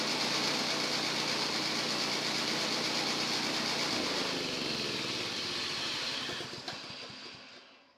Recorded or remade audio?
recorded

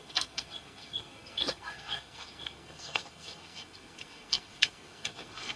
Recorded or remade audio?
remade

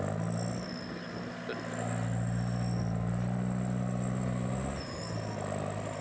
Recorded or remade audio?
recorded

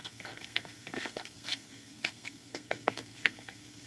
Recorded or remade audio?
remade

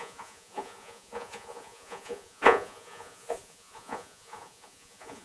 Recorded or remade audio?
remade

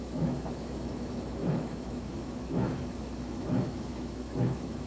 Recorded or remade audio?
remade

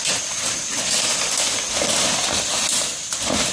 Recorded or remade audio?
recorded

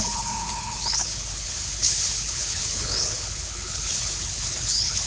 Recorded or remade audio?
remade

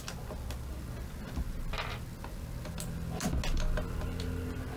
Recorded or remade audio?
recorded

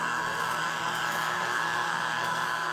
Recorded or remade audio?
remade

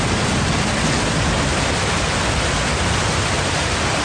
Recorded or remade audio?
recorded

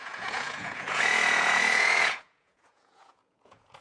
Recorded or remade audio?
remade